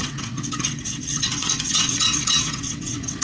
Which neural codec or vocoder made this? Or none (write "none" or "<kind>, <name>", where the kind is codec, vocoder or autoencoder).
vocoder, WaveNeXt